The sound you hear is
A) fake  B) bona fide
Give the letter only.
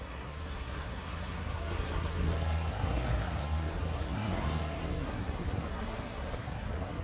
A